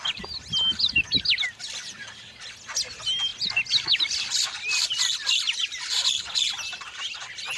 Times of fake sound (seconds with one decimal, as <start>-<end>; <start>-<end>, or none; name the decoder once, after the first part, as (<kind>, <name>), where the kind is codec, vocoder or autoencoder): none